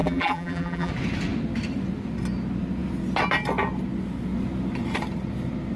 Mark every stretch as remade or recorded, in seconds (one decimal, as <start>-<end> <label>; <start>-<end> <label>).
0.0-0.9 remade; 0.9-5.8 recorded